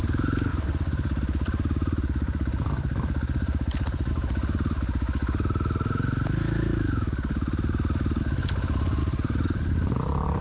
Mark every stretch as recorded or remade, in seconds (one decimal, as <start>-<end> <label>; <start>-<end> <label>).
0.0-0.5 recorded; 0.5-4.1 remade; 4.1-9.0 recorded; 9.0-10.4 remade